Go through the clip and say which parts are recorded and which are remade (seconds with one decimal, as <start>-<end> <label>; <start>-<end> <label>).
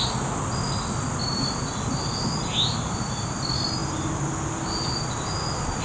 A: 0.0-5.8 recorded